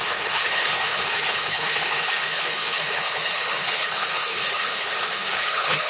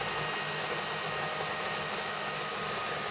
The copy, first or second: first